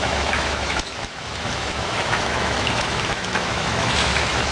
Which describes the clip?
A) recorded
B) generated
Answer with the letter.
B